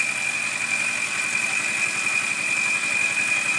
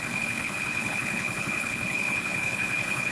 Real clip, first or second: first